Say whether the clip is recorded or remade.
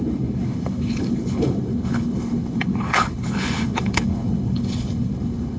remade